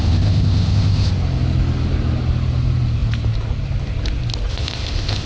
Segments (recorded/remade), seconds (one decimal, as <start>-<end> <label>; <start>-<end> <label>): 0.0-1.1 remade; 1.1-4.5 recorded; 4.5-5.3 remade